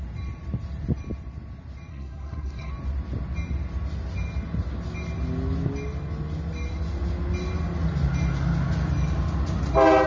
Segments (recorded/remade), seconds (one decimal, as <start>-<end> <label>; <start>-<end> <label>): 0.0-1.9 recorded; 1.9-2.7 remade; 2.7-10.1 recorded